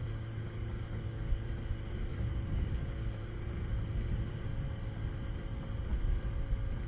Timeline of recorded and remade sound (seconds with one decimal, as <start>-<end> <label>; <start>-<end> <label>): 0.0-1.3 remade; 1.3-2.1 recorded; 2.1-3.2 remade; 3.2-6.9 recorded